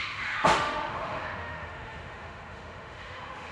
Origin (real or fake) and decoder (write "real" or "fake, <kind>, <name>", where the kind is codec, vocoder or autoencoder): fake, autoencoder, DAC-VAE